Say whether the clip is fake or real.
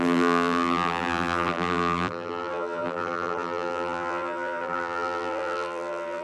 fake